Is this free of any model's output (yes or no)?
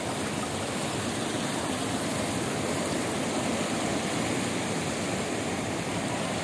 no